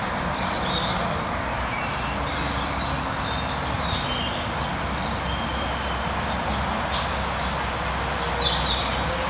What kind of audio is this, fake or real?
real